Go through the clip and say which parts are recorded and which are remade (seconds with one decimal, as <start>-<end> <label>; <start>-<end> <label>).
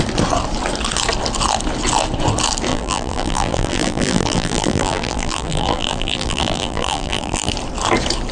0.0-2.7 recorded; 2.7-7.5 remade; 7.5-8.3 recorded